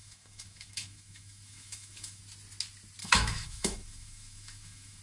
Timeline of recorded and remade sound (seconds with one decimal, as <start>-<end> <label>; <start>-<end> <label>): 0.0-2.2 remade; 2.2-3.0 recorded; 3.0-5.0 remade